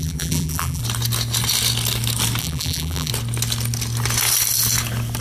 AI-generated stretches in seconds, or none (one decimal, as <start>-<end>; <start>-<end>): 0.0-0.8; 2.4-3.1